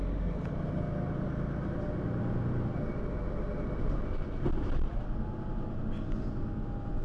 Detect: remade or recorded recorded